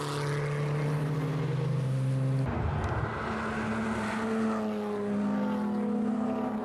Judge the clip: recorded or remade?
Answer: recorded